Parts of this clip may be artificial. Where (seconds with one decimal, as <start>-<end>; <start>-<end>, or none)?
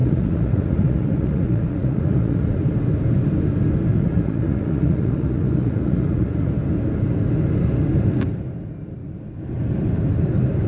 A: 0.0-2.5; 3.9-6.5